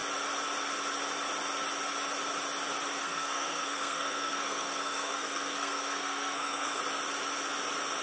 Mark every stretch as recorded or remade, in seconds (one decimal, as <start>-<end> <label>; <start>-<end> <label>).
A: 0.0-3.0 recorded; 3.0-6.8 remade; 6.8-8.0 recorded

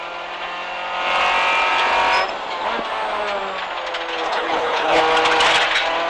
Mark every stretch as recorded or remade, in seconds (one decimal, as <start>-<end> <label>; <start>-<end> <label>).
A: 0.0-4.3 recorded; 4.3-5.0 remade; 5.0-6.1 recorded

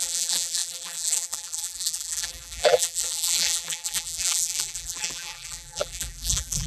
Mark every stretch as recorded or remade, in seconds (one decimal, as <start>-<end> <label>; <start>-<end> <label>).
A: 0.0-6.7 remade

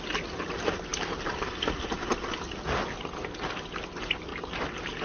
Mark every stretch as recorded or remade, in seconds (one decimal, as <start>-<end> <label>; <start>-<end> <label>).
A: 0.0-5.0 recorded

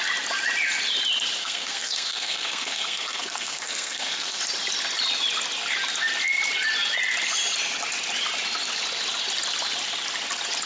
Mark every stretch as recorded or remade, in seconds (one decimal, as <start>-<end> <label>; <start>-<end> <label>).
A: 0.0-1.4 recorded; 1.4-4.4 remade; 4.4-10.7 recorded

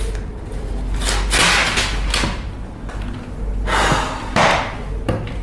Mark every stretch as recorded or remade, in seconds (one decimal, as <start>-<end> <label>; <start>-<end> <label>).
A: 0.0-5.4 recorded